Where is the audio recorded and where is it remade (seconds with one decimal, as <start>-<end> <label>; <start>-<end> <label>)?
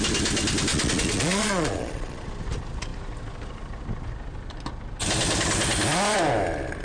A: 0.0-0.7 recorded; 0.7-2.3 remade; 2.3-6.8 recorded